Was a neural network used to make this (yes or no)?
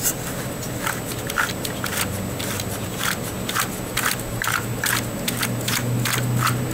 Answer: no